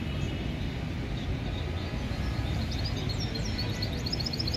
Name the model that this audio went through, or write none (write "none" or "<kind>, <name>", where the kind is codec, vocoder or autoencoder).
none